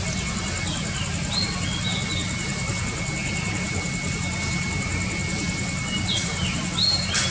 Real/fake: real